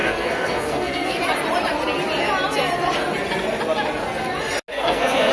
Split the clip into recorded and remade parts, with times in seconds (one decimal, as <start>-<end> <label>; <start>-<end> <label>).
0.0-1.2 remade; 1.2-4.7 recorded; 4.7-5.3 remade